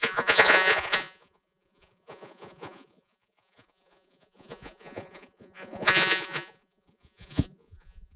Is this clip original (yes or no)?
no